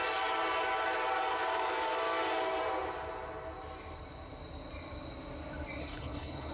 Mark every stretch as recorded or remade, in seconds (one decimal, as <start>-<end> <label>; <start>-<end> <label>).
0.0-5.8 recorded; 5.8-6.5 remade